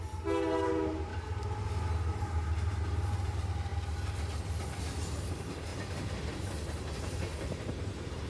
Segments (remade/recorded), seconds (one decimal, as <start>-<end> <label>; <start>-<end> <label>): 0.0-1.1 remade; 1.1-2.2 recorded; 2.2-3.7 remade; 3.7-5.3 recorded; 5.3-5.7 remade; 5.7-7.0 recorded; 7.0-8.3 remade